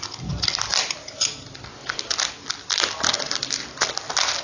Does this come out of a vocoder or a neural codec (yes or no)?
no